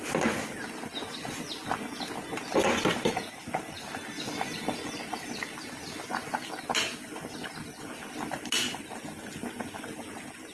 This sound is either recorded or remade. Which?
recorded